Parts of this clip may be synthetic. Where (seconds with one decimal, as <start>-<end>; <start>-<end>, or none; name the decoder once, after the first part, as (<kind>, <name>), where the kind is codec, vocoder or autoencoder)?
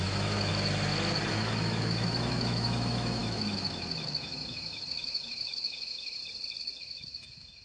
0.0-0.5 (autoencoder, DAC-VAE); 1.3-6.2; 6.8-7.6